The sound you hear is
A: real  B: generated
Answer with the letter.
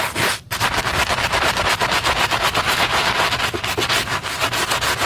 A